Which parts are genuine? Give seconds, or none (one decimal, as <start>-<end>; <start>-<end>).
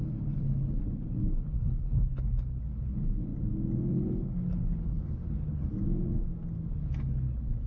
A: 3.3-3.9; 5.7-6.7